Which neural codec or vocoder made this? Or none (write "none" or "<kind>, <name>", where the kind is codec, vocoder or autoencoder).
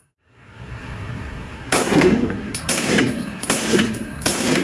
codec, SNAC